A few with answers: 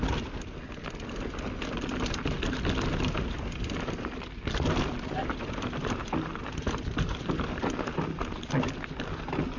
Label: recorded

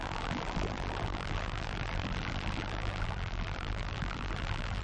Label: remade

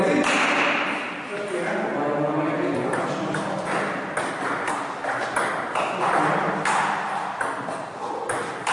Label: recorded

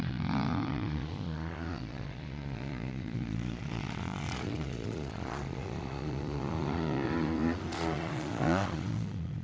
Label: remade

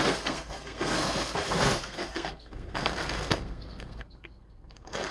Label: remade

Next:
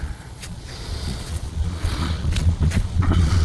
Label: remade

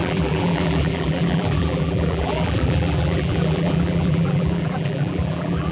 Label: remade